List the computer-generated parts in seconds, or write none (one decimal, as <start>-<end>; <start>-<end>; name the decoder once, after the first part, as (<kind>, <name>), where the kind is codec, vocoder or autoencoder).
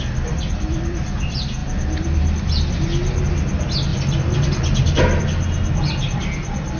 3.9-5.2 (vocoder, BigVGAN v2)